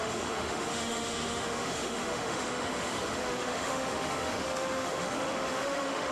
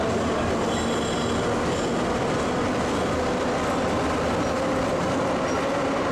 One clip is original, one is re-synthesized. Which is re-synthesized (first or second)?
first